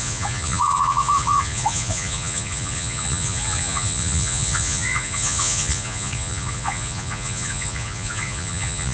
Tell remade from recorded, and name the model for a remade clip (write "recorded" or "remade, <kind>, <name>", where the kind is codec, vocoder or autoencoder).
remade, vocoder, Vocos